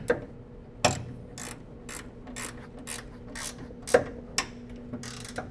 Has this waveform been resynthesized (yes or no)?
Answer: no